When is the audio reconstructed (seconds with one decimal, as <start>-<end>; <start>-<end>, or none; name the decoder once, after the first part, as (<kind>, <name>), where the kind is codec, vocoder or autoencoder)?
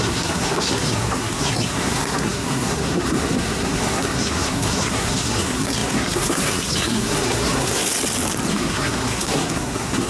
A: 0.0-7.8 (codec, SNAC); 8.5-10.1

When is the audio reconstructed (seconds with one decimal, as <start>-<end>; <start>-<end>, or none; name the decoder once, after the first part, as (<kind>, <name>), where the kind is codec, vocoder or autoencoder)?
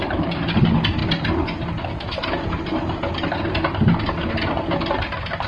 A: none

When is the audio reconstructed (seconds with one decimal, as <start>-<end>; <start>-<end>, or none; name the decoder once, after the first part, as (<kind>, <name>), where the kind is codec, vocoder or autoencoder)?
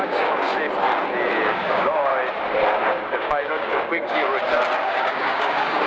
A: 0.0-0.5 (codec, DAC); 1.5-2.1; 2.9-4.3; 4.8-5.9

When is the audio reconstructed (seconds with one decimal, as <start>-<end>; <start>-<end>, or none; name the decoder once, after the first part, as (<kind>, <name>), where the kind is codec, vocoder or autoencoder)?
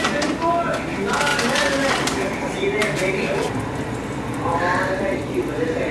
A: 0.0-1.3 (vocoder, BigVGAN v2); 1.9-2.8; 4.2-5.9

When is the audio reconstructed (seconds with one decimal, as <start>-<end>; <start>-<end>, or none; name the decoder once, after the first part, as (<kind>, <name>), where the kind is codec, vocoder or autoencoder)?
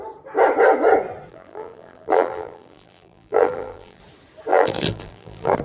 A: 1.3-4.0 (vocoder, BigVGAN v2); 4.5-5.6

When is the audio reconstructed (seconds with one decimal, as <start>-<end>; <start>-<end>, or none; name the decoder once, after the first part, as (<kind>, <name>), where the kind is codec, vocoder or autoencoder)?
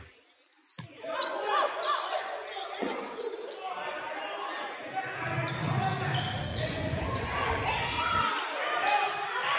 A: 1.1-3.3 (vocoder, Vocos); 6.5-7.5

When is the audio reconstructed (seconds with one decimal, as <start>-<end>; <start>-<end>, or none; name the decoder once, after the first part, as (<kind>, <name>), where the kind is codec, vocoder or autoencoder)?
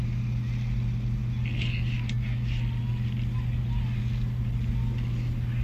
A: none